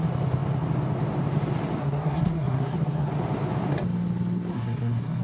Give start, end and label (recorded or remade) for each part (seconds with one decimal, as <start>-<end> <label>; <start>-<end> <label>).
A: 0.0-1.8 recorded; 1.8-3.1 remade; 3.1-4.5 recorded; 4.5-5.2 remade